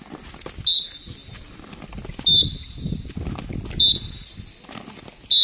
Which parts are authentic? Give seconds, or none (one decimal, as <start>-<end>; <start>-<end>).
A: 0.0-5.4